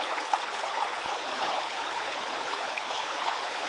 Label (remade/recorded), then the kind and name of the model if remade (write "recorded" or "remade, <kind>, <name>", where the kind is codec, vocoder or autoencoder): remade, codec, HILCodec